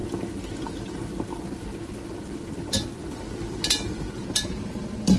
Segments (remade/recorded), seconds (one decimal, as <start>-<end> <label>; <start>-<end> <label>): 0.0-5.2 recorded